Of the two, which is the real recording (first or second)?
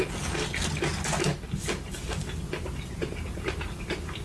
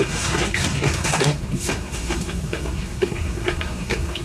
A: first